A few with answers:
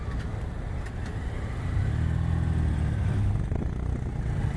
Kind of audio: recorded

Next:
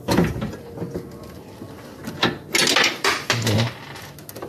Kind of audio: recorded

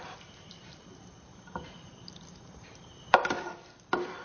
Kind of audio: remade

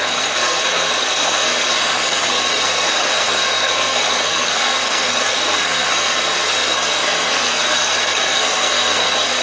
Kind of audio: remade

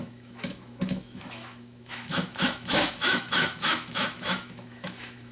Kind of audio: remade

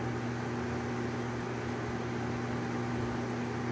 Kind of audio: recorded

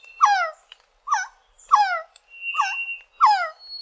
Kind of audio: recorded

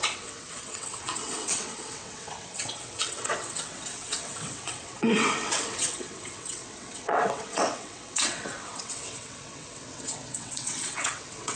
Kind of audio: remade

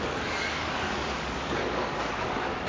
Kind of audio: remade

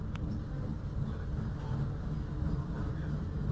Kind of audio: recorded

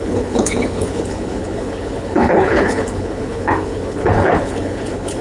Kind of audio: remade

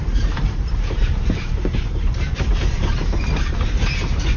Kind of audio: remade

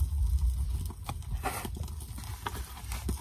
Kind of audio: recorded